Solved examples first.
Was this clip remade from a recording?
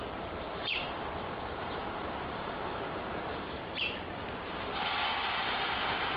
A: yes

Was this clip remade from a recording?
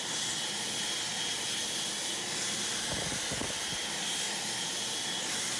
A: no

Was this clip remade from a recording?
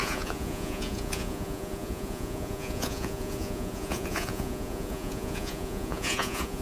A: yes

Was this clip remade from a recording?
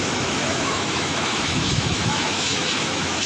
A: yes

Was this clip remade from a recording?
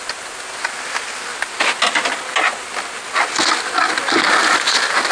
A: no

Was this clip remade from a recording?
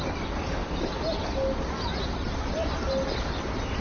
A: no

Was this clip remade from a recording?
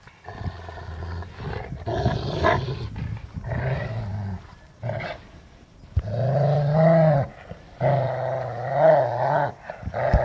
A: no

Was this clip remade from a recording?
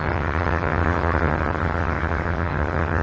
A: yes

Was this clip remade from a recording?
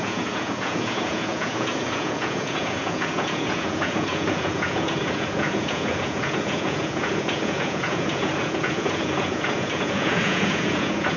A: yes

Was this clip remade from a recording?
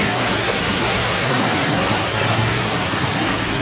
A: yes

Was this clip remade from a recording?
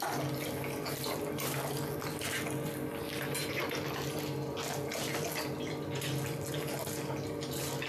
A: no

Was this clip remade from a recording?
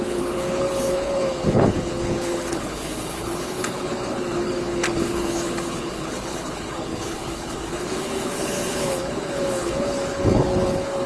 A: yes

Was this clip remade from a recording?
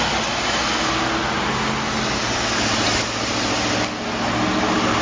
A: no